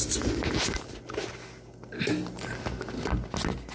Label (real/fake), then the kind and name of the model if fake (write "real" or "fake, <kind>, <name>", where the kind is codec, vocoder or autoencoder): real